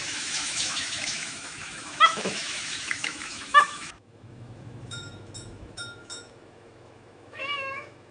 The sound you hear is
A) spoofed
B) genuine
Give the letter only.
A